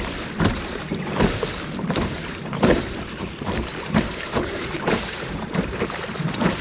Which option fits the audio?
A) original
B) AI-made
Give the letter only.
B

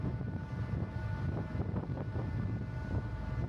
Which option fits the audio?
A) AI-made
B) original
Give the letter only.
B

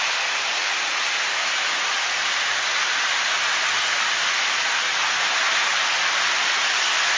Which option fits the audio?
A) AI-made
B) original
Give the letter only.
B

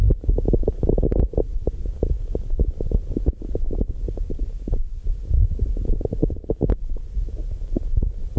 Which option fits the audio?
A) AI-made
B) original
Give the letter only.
B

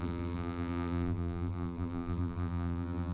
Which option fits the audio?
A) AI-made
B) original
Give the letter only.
A